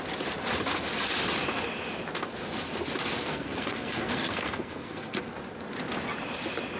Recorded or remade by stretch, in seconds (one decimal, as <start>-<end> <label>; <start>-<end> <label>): 0.0-3.2 recorded; 3.2-5.2 remade; 5.2-6.8 recorded